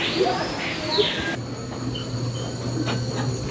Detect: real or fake real